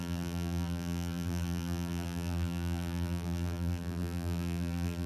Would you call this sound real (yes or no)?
no